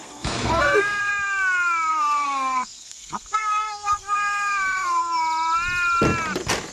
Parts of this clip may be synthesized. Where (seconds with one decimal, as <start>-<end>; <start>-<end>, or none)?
0.0-1.1; 1.9-5.0

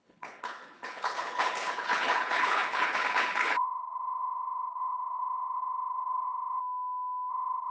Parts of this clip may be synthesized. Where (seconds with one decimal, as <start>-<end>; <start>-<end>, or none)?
0.0-6.6; 7.3-7.7

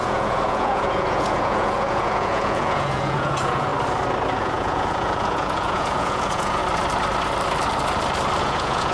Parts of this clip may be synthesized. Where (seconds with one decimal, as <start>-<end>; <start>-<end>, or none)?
0.0-3.7; 4.4-6.6; 8.4-8.9

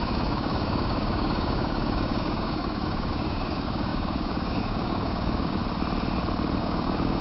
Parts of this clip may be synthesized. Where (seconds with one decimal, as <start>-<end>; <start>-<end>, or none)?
0.0-5.6; 6.6-7.2

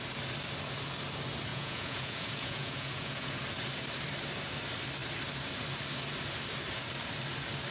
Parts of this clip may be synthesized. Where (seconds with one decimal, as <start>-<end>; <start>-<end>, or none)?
1.5-3.4

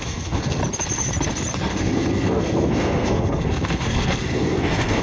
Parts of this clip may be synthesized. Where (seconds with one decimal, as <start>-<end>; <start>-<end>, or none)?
0.0-0.6; 1.7-5.0